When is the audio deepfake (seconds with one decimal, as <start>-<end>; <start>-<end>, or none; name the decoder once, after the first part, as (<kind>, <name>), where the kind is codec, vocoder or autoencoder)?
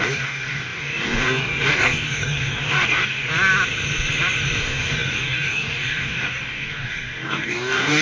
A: 0.0-3.3 (codec, DAC); 4.6-8.0